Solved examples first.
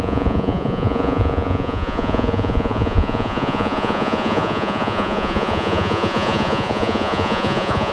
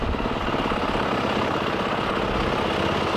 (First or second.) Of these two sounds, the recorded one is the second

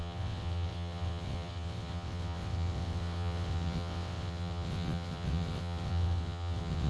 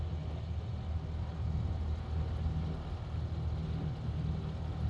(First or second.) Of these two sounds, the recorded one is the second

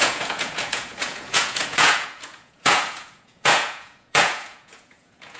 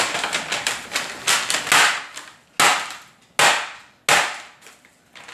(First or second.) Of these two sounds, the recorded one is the second